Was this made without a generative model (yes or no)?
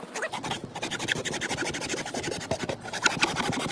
yes